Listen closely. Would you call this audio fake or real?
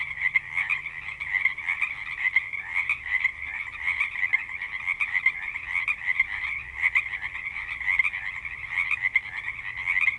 real